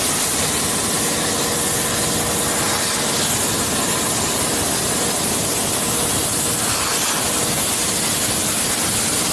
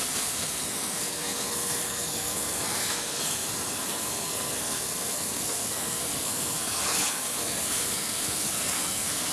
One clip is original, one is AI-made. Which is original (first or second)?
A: first